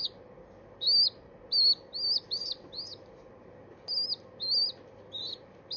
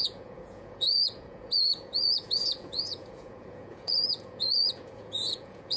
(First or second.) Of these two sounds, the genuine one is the first